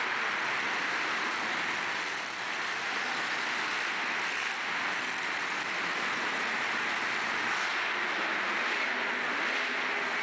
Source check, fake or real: real